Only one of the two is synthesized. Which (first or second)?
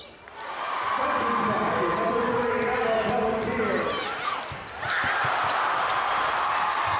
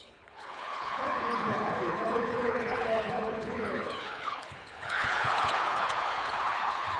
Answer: second